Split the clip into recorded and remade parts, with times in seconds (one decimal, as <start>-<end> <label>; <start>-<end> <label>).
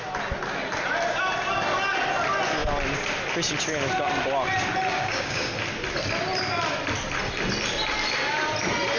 0.0-4.9 recorded; 4.9-5.5 remade; 5.5-9.0 recorded